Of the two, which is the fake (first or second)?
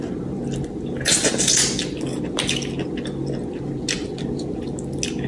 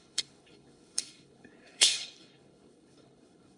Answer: second